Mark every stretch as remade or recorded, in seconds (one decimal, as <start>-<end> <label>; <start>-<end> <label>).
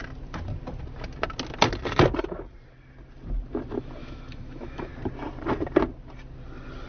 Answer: 0.0-4.0 recorded; 4.0-4.9 remade; 4.9-6.9 recorded